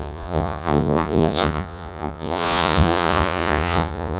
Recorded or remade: remade